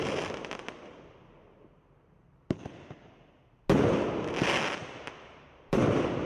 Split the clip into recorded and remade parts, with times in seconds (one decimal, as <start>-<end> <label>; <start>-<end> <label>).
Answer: 0.0-4.8 recorded; 4.8-6.3 remade